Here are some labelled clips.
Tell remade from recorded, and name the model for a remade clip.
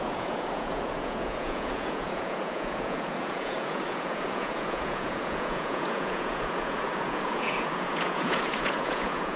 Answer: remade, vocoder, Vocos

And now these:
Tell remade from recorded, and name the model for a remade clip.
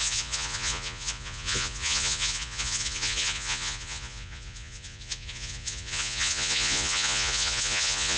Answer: remade, vocoder, Vocos